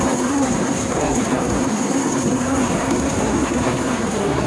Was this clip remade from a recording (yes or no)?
yes